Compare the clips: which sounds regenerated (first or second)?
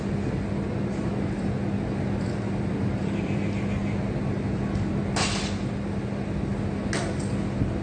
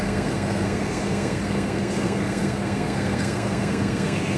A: second